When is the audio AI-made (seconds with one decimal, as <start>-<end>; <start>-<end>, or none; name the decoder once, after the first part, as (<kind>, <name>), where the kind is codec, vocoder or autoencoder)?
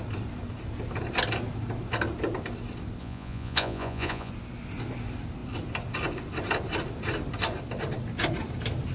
3.0-4.3 (vocoder, Vocos)